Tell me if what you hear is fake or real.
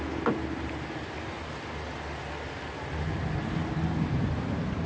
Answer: real